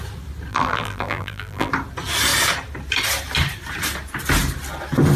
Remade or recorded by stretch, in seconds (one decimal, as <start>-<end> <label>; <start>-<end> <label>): 0.0-0.5 recorded; 0.5-1.7 remade; 1.7-5.2 recorded